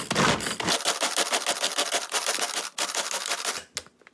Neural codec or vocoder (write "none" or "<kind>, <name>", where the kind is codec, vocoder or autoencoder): none